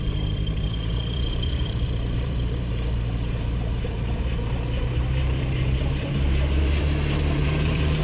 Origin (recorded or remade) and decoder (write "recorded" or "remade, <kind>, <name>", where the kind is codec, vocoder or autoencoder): remade, vocoder, BigVGAN v2